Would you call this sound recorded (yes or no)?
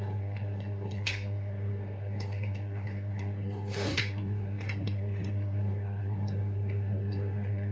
no